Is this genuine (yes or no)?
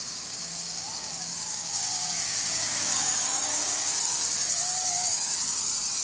no